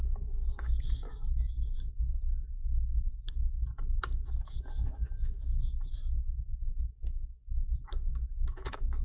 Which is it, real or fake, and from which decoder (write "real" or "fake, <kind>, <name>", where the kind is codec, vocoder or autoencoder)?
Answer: fake, autoencoder, DAC-VAE